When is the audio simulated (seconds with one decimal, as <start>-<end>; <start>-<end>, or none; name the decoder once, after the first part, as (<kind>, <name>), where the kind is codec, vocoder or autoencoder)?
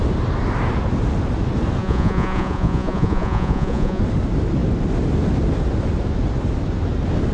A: 1.8-4.0 (vocoder, Vocos)